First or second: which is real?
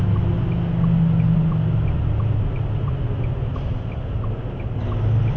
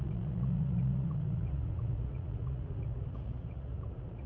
first